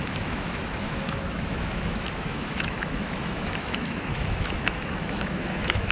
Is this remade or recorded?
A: remade